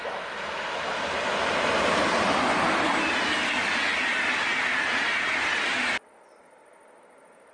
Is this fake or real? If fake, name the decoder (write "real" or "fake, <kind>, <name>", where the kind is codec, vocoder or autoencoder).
real